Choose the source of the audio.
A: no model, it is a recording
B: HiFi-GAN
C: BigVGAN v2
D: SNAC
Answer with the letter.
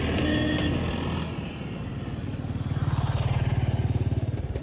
A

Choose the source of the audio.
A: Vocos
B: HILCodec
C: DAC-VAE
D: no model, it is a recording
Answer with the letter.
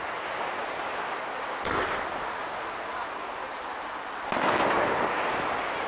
D